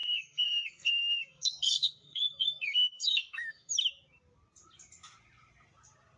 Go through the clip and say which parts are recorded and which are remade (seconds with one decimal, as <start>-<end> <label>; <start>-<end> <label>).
0.0-3.7 remade; 3.7-6.2 recorded